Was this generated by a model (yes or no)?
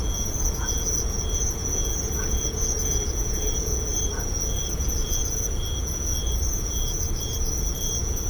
yes